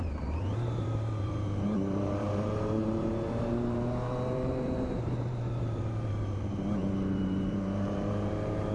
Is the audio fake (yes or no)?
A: yes